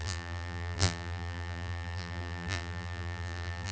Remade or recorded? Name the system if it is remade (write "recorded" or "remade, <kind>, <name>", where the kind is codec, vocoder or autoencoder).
remade, vocoder, BigVGAN v2